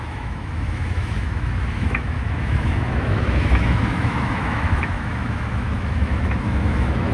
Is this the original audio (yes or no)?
no